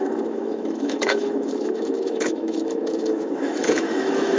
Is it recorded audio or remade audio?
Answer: remade